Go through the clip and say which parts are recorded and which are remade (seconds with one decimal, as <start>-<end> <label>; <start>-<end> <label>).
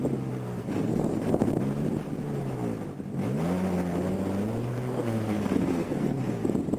0.0-0.4 recorded; 0.4-1.6 remade; 1.6-4.7 recorded; 4.7-6.2 remade; 6.2-6.8 recorded